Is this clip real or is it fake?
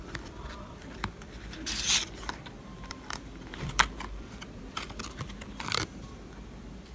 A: fake